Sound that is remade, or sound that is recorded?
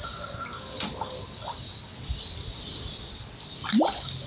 recorded